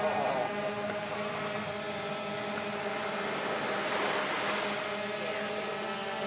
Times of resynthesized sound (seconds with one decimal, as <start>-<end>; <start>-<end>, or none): none